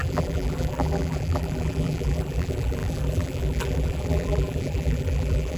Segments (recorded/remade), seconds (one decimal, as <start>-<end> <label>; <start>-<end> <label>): 0.0-5.6 remade